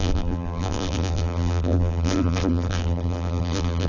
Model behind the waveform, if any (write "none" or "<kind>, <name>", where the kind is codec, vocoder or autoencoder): vocoder, BigVGAN v2